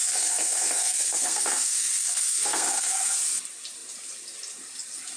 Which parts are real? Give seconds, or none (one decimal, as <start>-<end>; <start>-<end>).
3.1-5.2